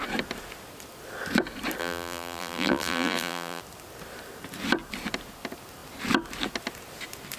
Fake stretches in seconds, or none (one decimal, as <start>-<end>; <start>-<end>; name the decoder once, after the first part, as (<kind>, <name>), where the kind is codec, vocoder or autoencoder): 1.8-3.6 (vocoder, BigVGAN v2)